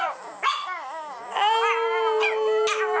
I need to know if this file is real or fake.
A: real